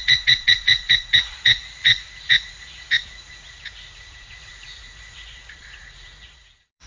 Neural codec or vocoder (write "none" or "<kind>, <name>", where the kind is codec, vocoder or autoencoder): vocoder, Vocos